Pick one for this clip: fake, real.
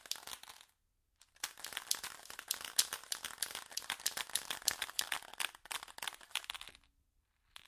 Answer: real